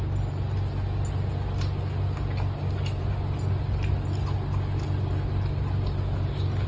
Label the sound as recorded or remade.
recorded